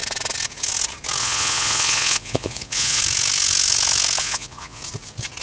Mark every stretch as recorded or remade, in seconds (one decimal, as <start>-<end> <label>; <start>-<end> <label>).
0.0-1.2 recorded; 1.2-3.0 remade; 3.0-4.2 recorded; 4.2-4.8 remade; 4.8-5.4 recorded